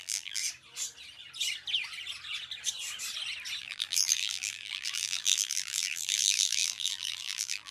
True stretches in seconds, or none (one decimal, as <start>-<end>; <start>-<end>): 0.4-3.6

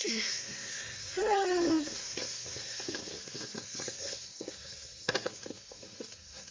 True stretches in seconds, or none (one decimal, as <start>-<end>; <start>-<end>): none

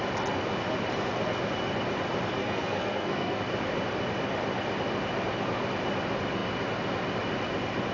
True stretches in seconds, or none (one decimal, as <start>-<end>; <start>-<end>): 0.0-2.4; 3.4-7.9

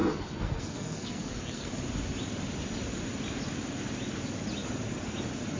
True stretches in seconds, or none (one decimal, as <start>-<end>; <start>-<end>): 1.7-5.6